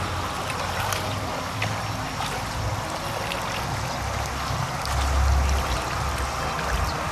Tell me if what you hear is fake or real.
real